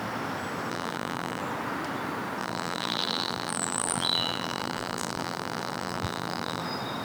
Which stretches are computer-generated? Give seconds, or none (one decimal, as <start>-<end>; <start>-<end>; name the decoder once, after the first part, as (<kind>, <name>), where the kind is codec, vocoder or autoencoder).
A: 0.7-1.4 (vocoder, BigVGAN v2); 2.4-6.6